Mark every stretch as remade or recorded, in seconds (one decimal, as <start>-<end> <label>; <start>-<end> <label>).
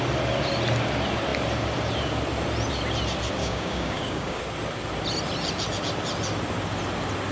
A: 0.0-3.4 recorded; 3.4-4.4 remade; 4.4-7.3 recorded